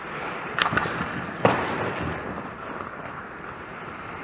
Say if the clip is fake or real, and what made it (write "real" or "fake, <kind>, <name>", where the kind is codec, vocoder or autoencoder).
real